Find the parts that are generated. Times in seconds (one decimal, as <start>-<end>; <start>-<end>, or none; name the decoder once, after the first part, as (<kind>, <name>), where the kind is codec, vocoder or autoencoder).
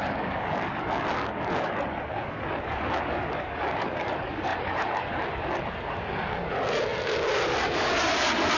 0.0-8.6 (codec, DAC)